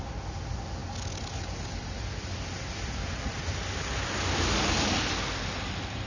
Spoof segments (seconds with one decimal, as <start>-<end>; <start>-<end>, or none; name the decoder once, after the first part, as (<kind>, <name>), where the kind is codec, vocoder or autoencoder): none